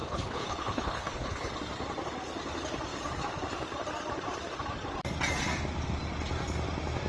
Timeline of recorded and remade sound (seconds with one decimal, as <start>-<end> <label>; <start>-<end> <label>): 0.0-1.5 remade; 1.5-7.1 recorded